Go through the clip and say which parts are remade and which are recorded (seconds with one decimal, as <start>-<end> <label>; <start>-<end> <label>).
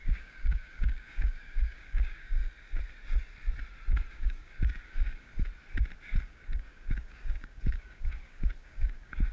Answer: 0.0-2.4 remade; 2.4-4.1 recorded; 4.1-5.3 remade; 5.3-6.2 recorded; 6.2-9.3 remade